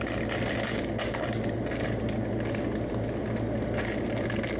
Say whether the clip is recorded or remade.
recorded